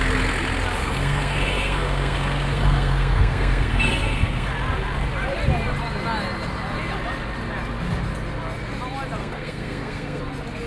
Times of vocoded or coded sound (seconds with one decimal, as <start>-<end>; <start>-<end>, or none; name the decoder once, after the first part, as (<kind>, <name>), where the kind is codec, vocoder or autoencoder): 0.8-4.5 (codec, SNAC); 9.2-10.2